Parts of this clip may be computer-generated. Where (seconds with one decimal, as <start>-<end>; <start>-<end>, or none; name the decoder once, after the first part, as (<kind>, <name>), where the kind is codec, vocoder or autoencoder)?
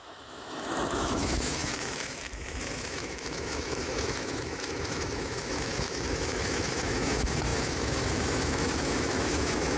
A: 0.0-9.8 (autoencoder, DAC-VAE)